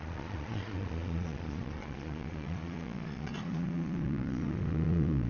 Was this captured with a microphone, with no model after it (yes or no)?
no